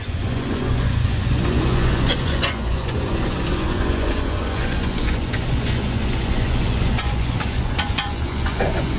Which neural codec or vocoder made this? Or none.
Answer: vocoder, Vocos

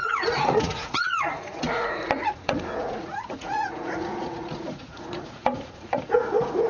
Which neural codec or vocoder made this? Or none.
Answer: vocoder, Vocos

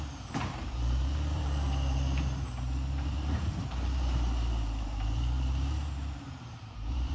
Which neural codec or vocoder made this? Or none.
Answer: vocoder, BigVGAN v2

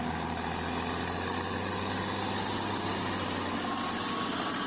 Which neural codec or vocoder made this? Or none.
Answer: none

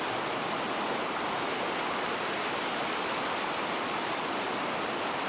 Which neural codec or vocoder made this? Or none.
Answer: none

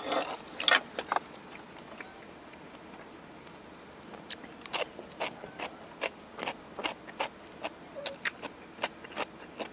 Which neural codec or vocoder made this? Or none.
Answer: none